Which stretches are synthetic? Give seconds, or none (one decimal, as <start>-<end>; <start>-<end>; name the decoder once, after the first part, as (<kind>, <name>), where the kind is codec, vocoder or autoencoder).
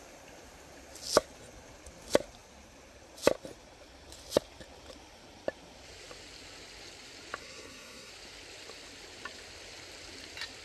7.4-8.1 (codec, SNAC)